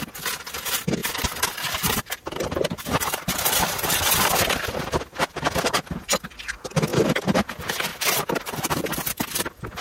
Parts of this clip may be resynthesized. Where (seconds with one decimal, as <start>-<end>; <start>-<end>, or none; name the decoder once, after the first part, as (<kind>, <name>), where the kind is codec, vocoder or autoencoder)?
1.0-5.9 (vocoder, BigVGAN v2); 7.9-9.8